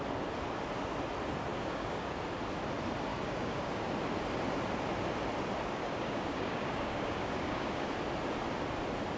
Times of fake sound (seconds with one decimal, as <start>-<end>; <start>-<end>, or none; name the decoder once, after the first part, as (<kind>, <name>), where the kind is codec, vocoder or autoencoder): 1.5-2.2 (codec, DAC); 3.1-3.9; 5.8-7.9

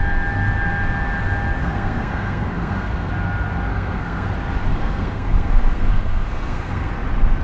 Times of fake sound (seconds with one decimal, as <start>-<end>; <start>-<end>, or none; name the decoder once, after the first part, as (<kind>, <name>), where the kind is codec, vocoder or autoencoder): 1.6-3.1 (codec, SNAC); 3.7-4.3; 4.7-6.9

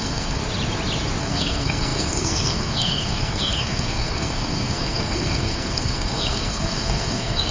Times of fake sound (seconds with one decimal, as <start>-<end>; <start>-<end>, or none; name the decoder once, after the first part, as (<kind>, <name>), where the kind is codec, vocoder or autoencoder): 0.0-0.4 (codec, SNAC); 1.2-7.5